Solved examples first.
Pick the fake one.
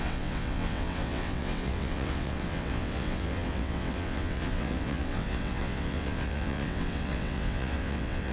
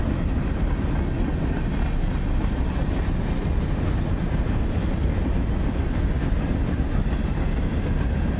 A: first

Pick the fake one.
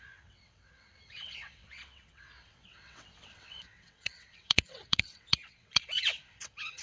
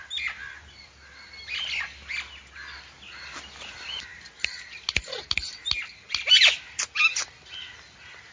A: first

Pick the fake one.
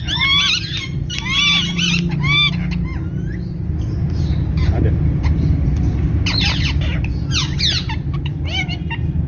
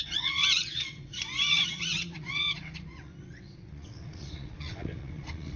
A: second